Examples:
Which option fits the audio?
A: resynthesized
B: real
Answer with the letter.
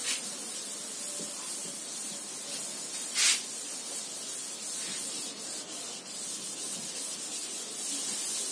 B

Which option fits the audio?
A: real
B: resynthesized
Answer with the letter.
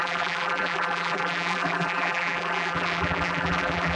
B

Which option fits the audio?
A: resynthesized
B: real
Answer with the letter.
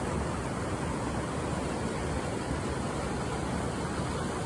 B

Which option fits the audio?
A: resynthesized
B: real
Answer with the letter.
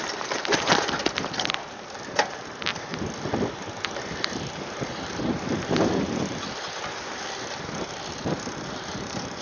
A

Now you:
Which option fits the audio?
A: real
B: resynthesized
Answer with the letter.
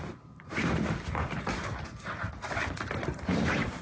B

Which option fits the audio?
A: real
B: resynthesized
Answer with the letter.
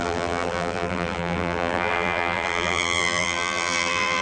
B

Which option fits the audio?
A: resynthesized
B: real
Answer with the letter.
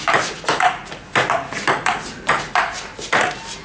B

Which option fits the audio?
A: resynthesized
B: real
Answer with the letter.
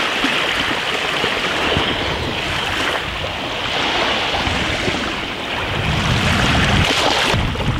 B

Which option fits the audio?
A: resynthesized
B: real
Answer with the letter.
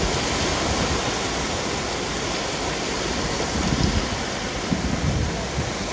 B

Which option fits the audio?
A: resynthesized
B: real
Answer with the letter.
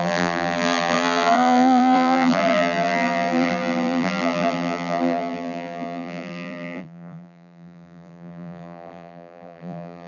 A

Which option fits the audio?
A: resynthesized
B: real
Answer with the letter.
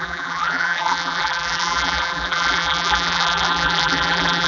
A